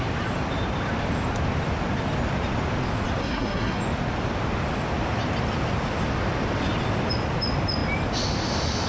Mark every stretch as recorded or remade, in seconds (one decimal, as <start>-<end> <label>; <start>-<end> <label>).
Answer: 0.0-3.2 recorded; 3.2-3.8 remade; 3.8-8.9 recorded